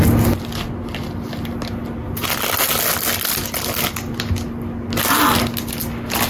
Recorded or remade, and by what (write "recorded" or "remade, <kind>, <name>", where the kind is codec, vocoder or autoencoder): recorded